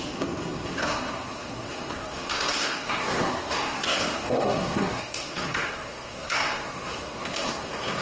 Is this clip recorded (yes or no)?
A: no